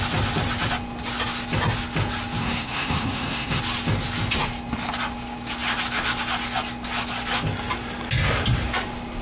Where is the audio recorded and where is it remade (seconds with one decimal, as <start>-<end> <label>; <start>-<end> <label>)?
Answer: 0.0-2.4 recorded; 2.4-3.6 remade; 3.6-9.2 recorded